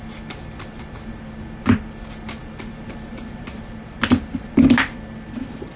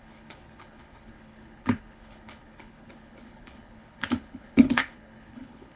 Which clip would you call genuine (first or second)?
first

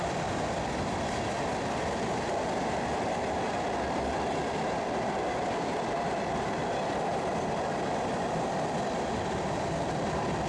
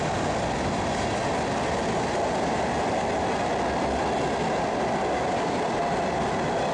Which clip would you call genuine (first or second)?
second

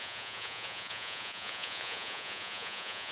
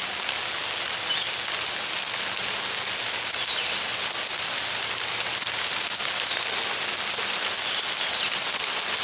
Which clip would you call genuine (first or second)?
second